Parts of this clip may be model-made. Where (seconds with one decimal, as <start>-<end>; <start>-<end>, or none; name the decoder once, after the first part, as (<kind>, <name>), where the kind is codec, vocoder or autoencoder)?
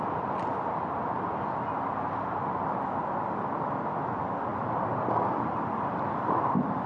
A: 4.5-6.3 (vocoder, BigVGAN v2)